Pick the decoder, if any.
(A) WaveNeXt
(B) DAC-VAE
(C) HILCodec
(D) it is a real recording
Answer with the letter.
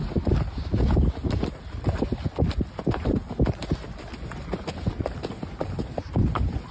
D